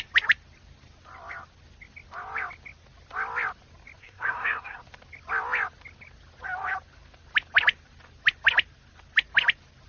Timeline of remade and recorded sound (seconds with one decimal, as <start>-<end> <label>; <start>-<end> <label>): 0.0-4.0 recorded; 4.0-4.8 remade; 4.8-9.9 recorded